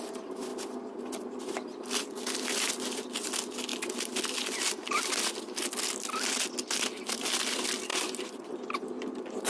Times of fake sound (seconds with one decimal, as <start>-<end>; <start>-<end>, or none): 0.0-0.5; 1.0-3.7; 7.0-7.9; 8.8-9.5